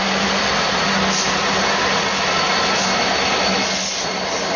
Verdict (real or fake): real